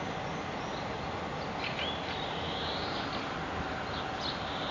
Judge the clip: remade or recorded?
recorded